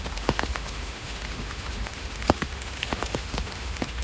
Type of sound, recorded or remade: remade